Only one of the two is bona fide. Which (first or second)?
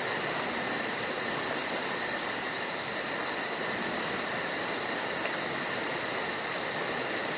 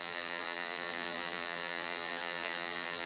first